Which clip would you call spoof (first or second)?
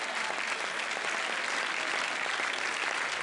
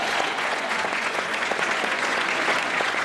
second